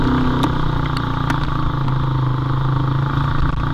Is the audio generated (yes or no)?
no